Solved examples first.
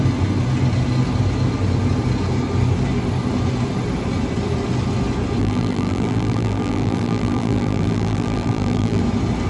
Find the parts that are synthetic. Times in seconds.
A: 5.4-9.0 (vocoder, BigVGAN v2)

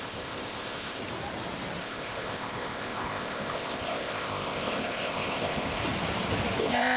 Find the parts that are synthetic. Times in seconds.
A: 0.0-1.0 (codec, ZipCodec); 1.8-5.8; 6.6-7.0

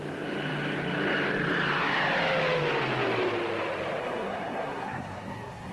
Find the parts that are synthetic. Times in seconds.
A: 4.0-5.7 (codec, SNAC)

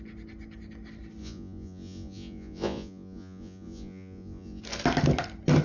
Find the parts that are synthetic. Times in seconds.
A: 1.2-4.6 (vocoder, Vocos)

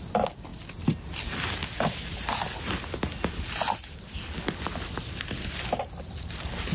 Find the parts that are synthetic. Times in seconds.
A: none

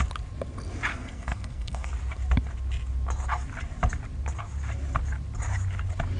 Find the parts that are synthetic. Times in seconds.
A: 0.9-1.9 (codec, SNAC)

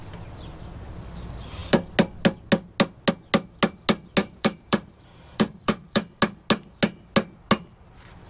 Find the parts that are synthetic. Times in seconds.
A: 4.2-6.2 (vocoder, BigVGAN v2)

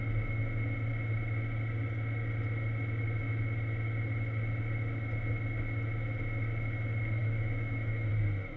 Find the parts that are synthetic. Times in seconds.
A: 7.2-8.1 (autoencoder, DAC-VAE)